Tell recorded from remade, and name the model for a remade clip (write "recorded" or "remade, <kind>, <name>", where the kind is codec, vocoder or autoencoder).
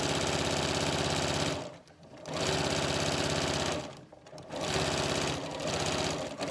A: recorded